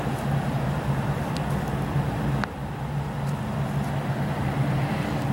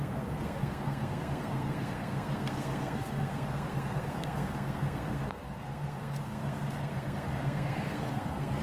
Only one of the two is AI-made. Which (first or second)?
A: second